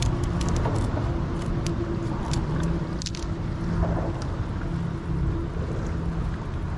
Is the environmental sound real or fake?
real